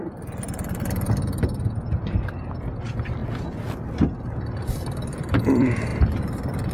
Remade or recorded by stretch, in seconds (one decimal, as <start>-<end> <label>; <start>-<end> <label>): 0.0-3.2 remade; 3.2-4.7 recorded; 4.7-5.9 remade; 5.9-6.7 recorded